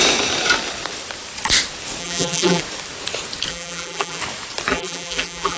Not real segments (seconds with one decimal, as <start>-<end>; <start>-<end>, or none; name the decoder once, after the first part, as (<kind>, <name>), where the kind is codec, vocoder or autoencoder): 2.0-2.6 (vocoder, BigVGAN v2); 3.5-4.2; 4.7-5.6